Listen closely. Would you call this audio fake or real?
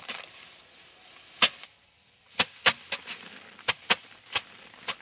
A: real